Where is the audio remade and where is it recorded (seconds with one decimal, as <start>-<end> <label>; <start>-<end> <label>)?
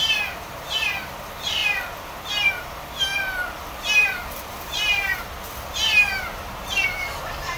0.0-1.6 remade; 1.6-2.5 recorded; 2.5-3.1 remade; 3.1-3.9 recorded; 3.9-5.1 remade; 5.1-6.1 recorded; 6.1-7.6 remade